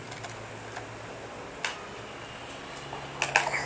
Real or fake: real